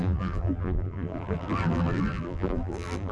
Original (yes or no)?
no